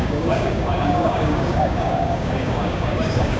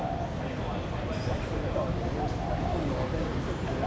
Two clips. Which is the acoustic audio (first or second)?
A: second